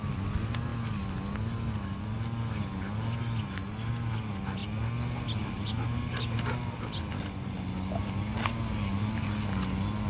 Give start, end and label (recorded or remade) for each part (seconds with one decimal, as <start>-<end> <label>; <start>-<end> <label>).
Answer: 0.0-10.1 recorded